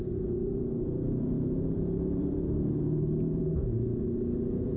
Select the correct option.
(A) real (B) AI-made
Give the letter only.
B